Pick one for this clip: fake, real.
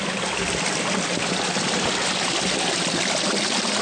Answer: real